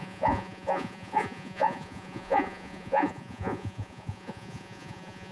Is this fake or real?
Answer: fake